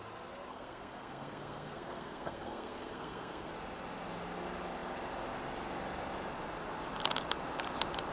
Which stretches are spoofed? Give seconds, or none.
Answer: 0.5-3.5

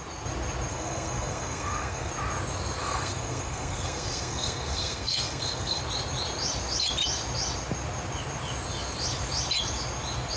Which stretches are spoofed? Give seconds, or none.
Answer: 0.7-2.1; 2.8-5.8

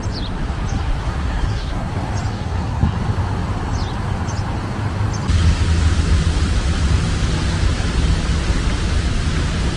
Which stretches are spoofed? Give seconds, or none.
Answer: 1.0-1.9; 2.3-3.0

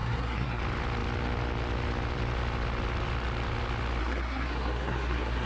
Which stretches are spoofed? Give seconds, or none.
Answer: 0.0-0.6; 4.0-5.5